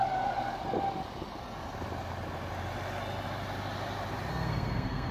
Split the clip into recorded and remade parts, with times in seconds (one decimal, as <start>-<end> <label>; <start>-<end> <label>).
0.0-4.3 recorded; 4.3-5.1 remade